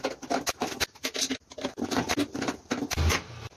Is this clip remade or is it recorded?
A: recorded